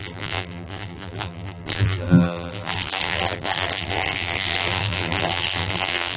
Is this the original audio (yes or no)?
no